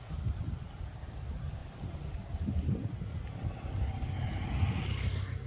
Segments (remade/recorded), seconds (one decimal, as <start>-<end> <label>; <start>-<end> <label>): 0.0-5.5 recorded